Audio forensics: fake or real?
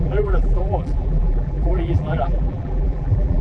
fake